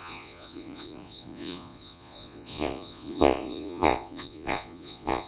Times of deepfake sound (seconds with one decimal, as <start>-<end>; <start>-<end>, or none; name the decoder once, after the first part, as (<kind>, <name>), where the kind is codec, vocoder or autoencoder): 0.0-5.3 (vocoder, Vocos)

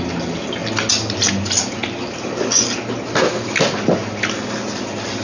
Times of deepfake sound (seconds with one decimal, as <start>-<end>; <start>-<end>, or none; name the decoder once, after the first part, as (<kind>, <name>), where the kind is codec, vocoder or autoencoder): none

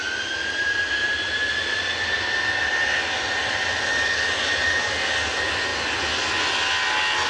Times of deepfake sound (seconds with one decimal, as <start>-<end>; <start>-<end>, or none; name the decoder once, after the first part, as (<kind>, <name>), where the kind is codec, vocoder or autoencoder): none

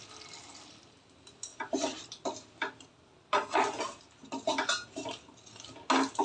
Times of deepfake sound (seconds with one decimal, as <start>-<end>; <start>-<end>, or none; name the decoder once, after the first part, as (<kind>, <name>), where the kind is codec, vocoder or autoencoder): none

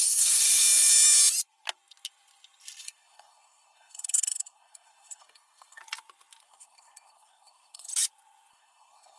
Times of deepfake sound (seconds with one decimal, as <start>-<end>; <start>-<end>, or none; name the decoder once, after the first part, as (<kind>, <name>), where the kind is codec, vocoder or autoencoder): 0.0-0.6 (codec, SNAC); 2.8-5.8; 6.4-7.9; 8.5-9.2

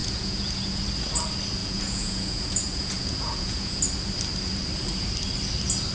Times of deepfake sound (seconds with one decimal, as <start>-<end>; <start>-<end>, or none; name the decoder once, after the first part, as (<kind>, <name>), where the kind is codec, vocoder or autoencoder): 0.0-0.8 (vocoder, Vocos); 1.6-3.8

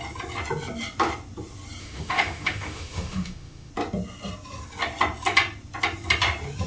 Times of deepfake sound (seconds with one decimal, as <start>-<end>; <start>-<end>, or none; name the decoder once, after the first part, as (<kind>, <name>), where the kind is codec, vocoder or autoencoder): 1.8-3.7 (autoencoder, DAC-VAE)

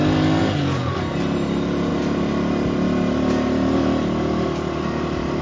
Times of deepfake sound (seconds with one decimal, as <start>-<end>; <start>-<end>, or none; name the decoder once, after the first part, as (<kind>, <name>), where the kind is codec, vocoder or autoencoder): 0.4-0.9 (vocoder, Vocos)